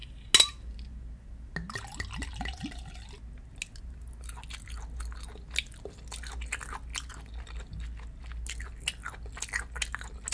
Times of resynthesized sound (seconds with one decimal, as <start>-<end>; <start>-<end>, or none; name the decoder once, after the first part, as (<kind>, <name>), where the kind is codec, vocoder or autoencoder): none